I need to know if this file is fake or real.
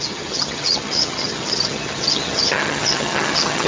fake